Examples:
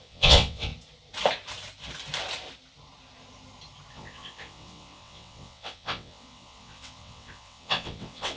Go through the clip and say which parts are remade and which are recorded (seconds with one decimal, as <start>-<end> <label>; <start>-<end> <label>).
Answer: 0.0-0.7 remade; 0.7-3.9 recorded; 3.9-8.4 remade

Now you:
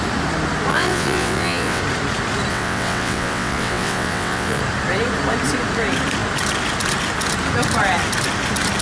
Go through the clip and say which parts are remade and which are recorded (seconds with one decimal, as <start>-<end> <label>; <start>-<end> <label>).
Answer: 0.0-0.7 recorded; 0.7-1.8 remade; 1.8-2.5 recorded; 2.5-4.6 remade; 4.6-8.8 recorded

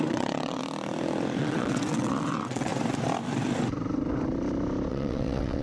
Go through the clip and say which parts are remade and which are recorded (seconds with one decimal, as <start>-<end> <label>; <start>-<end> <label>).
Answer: 0.0-0.6 remade; 0.6-1.4 recorded; 1.4-2.7 remade; 2.7-4.9 recorded; 4.9-5.6 remade